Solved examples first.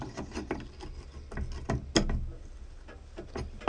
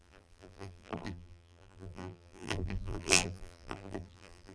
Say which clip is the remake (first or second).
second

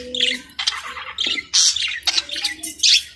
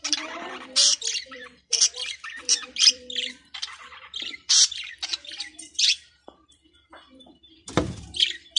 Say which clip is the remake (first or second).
second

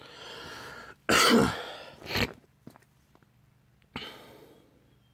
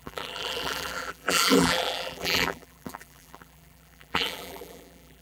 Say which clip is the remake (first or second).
second